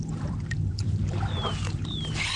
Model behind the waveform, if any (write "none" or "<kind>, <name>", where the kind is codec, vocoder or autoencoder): vocoder, BigVGAN v2